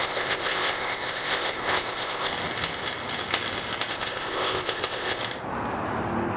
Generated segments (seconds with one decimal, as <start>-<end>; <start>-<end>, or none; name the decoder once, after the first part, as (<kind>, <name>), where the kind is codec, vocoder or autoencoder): 0.0-2.3 (codec, ZipCodec); 3.9-5.2

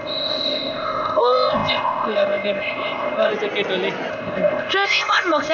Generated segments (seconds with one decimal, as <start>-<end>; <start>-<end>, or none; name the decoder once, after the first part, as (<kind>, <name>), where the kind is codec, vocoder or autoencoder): 0.0-3.3 (codec, ZipCodec); 4.1-5.5

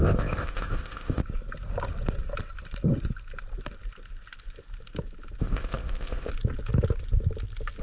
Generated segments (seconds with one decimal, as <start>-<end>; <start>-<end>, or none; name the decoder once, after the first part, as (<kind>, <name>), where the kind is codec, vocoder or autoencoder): 0.0-1.2 (codec, ZipCodec); 5.4-6.3

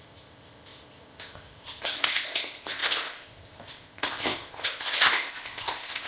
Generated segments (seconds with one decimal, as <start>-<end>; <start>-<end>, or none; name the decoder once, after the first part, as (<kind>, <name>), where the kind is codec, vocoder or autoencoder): 0.0-6.1 (codec, ZipCodec)

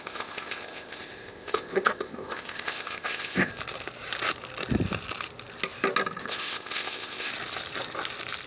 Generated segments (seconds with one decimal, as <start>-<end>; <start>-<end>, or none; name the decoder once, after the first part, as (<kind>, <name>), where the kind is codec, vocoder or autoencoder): 0.0-3.5 (codec, ZipCodec); 6.2-7.3

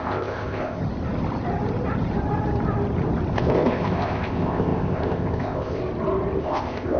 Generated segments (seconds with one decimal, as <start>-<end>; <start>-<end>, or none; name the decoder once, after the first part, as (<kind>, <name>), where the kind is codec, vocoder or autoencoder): 0.0-0.8 (codec, ZipCodec); 3.4-5.8; 6.4-7.0

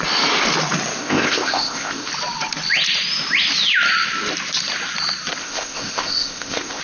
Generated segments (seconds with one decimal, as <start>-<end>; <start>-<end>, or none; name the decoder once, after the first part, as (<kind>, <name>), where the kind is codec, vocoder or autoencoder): 1.0-2.1 (codec, ZipCodec); 5.4-6.8

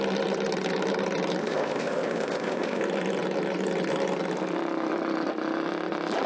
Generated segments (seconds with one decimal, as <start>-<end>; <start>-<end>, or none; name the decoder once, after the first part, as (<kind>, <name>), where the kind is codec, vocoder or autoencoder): 1.4-2.8 (codec, ZipCodec)